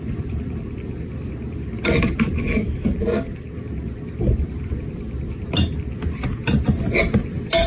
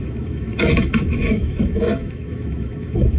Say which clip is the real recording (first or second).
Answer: first